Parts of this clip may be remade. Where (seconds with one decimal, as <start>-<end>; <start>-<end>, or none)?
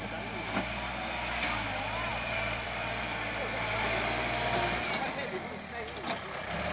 2.1-3.4